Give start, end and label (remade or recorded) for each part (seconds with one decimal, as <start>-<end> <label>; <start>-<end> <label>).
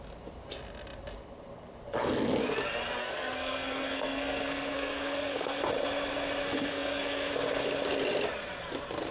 0.0-3.0 recorded; 3.0-5.6 remade; 5.6-6.4 recorded; 6.4-7.3 remade; 7.3-9.1 recorded